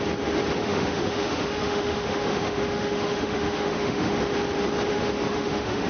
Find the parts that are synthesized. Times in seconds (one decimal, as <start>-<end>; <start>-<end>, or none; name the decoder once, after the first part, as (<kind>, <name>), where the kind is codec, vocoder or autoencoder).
0.6-4.1 (autoencoder, DAC-VAE); 4.9-5.9